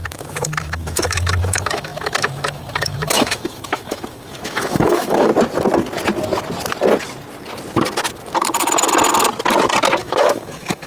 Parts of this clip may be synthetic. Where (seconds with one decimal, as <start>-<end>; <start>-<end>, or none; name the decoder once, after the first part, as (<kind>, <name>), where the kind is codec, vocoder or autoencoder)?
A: 0.0-5.3 (autoencoder, DAC-VAE); 10.0-10.9